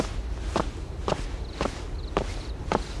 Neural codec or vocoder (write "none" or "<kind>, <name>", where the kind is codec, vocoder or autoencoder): none